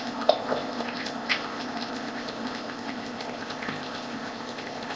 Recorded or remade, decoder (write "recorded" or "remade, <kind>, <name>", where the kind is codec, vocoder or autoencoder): remade, codec, ZipCodec